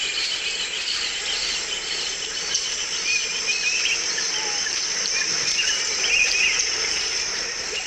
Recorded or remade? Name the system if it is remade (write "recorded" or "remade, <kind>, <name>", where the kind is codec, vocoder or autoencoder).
remade, vocoder, BigVGAN v2